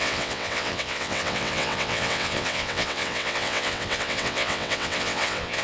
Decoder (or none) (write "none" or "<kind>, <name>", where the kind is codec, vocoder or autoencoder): vocoder, WaveNeXt